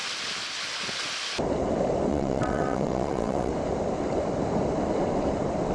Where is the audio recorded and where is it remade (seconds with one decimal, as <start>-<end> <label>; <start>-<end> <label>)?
0.0-2.1 recorded; 2.1-3.5 remade; 3.5-5.7 recorded